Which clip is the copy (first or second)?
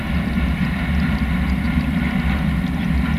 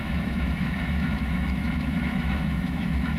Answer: second